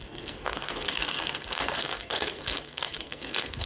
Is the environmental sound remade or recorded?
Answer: remade